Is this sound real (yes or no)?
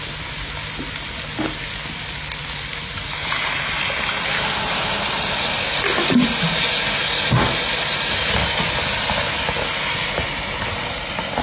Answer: yes